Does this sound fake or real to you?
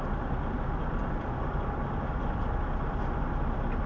fake